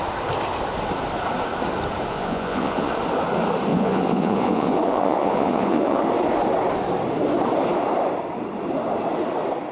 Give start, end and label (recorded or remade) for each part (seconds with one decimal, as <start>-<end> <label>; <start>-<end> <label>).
0.0-2.1 recorded; 2.1-2.9 remade; 2.9-3.7 recorded; 3.7-6.0 remade; 6.0-9.7 recorded